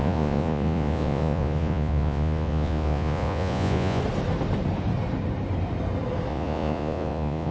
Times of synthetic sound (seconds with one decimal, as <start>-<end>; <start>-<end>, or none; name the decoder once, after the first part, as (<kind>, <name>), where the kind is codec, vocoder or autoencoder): 0.0-4.0 (vocoder, Vocos); 6.3-7.5